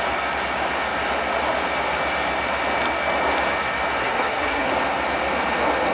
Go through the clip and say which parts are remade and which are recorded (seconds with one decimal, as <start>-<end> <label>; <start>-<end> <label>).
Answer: 0.0-4.0 recorded; 4.0-4.7 remade; 4.7-5.9 recorded